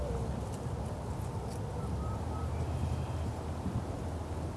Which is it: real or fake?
real